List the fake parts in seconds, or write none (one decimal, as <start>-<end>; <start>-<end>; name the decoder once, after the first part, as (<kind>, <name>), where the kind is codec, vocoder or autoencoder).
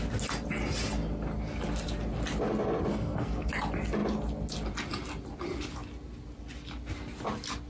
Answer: 2.9-3.5 (codec, SNAC)